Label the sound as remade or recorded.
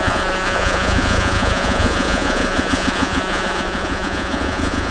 remade